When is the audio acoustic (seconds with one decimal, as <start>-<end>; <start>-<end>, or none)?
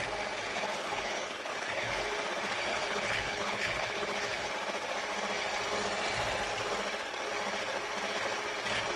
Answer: 0.0-0.5; 2.0-2.7; 4.5-9.0